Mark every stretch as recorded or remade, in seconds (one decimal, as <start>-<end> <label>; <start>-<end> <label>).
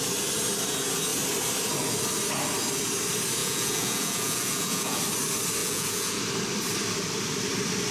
0.0-3.4 recorded; 3.4-5.0 remade; 5.0-5.6 recorded; 5.6-6.2 remade; 6.2-7.9 recorded